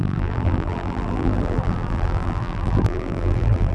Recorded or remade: remade